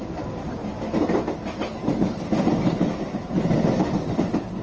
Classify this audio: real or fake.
real